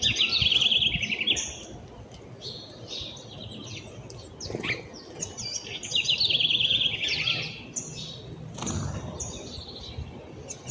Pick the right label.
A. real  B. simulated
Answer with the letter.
A